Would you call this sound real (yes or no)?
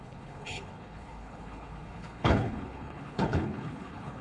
no